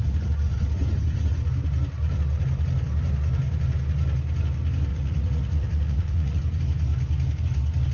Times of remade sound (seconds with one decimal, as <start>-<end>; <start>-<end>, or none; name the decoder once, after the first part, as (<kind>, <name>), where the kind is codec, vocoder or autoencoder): 4.9-6.4 (vocoder, Vocos)